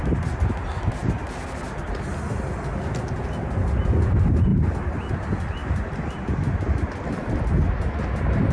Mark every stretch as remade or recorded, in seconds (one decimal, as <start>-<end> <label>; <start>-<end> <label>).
0.0-5.6 recorded; 5.6-6.4 remade; 6.4-8.5 recorded